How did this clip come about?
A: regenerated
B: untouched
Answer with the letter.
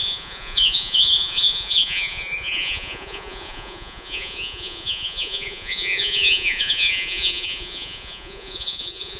A